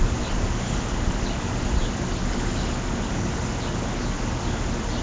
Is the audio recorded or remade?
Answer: recorded